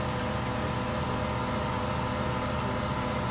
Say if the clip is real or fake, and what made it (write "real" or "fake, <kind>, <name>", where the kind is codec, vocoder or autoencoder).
real